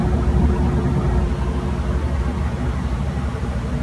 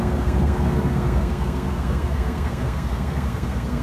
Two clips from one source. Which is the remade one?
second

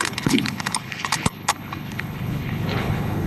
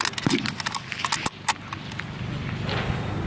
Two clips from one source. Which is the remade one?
first